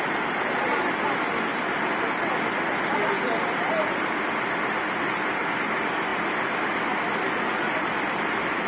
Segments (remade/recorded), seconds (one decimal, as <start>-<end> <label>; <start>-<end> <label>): 0.0-8.7 recorded